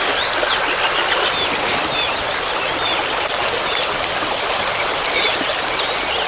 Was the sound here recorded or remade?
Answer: remade